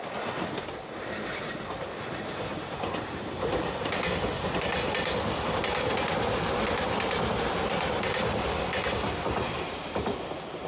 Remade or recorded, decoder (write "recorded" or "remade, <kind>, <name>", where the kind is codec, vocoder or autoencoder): recorded